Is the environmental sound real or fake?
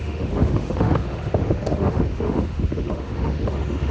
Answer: fake